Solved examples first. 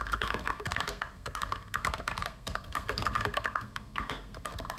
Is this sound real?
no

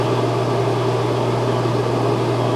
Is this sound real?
yes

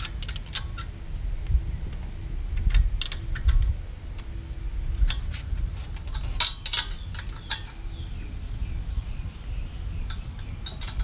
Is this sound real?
yes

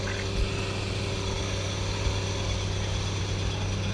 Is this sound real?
yes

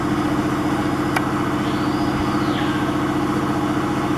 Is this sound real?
yes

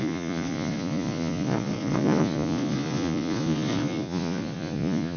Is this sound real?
no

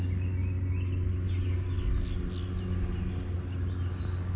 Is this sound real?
yes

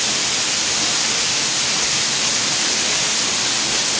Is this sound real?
yes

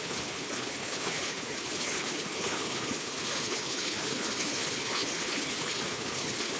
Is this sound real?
no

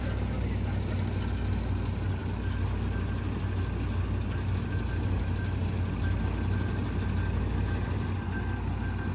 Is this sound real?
yes